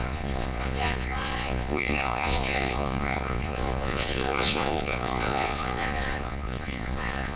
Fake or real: fake